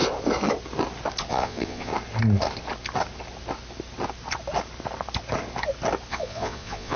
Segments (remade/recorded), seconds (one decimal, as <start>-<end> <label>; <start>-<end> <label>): 0.0-1.3 recorded; 1.3-1.9 remade; 1.9-6.1 recorded; 6.1-7.0 remade

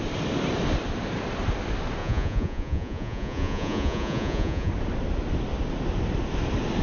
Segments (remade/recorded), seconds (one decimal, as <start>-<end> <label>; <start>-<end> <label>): 0.0-2.0 recorded; 2.0-4.7 remade; 4.7-6.8 recorded

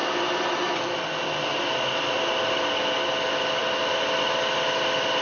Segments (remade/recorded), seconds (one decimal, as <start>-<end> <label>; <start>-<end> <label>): 0.0-5.2 recorded

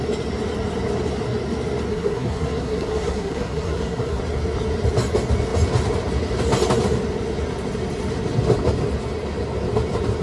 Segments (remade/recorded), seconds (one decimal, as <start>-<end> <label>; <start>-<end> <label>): 0.0-1.9 recorded; 1.9-4.2 remade; 4.2-10.2 recorded

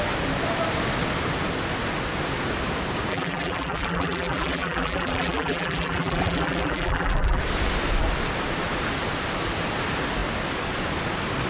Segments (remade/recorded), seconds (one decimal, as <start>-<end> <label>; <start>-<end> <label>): 0.0-3.1 recorded; 3.1-7.4 remade; 7.4-11.5 recorded

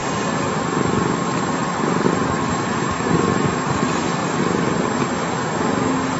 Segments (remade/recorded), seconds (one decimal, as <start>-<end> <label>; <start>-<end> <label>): 0.0-1.6 recorded; 1.6-2.6 remade; 2.6-4.2 recorded; 4.2-4.8 remade; 4.8-6.2 recorded